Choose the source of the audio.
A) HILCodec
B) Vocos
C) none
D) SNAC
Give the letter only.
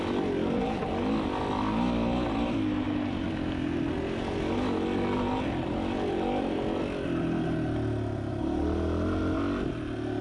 C